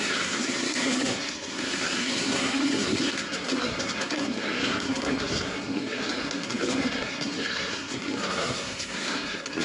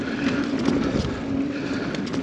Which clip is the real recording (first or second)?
second